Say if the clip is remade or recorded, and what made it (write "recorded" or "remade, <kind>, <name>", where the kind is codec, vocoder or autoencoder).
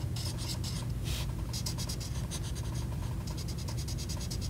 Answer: recorded